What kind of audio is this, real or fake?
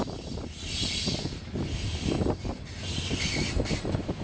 real